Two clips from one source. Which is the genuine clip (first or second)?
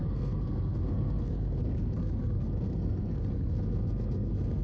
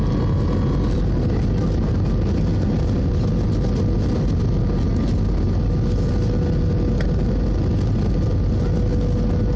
second